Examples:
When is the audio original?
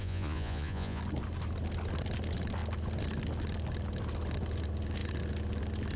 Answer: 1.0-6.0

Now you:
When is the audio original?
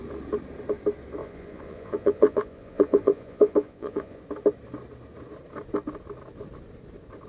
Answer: 0.0-1.2; 4.2-7.3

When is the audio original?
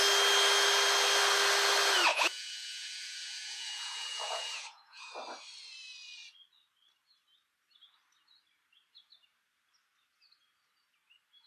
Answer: 0.0-2.1; 5.1-11.5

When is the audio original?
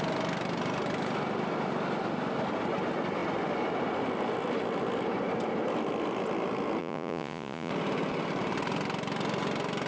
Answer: 0.0-6.8; 7.7-9.9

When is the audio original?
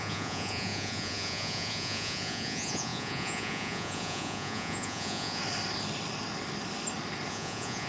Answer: 5.4-7.3